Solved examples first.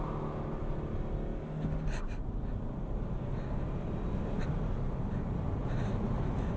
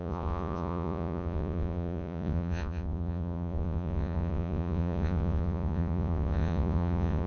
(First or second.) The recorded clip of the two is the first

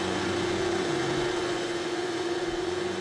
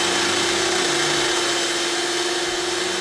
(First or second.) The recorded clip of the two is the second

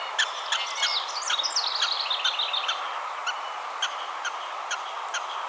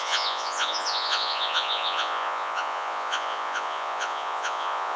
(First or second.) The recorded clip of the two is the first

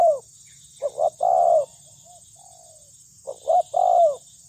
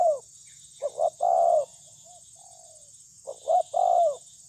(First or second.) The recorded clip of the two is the first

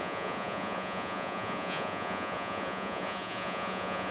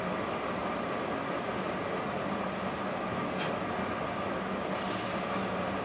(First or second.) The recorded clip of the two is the second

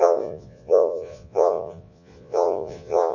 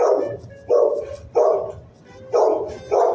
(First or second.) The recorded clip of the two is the second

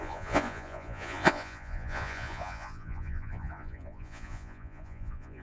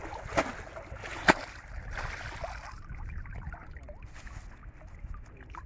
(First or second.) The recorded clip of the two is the second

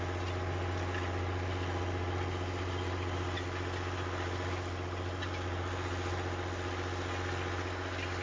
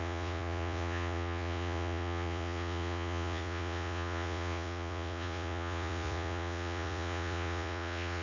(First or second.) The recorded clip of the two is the first